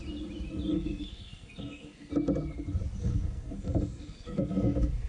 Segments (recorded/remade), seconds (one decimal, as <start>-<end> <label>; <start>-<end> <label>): 0.0-0.7 recorded; 0.7-2.1 remade; 2.1-3.0 recorded; 3.0-5.1 remade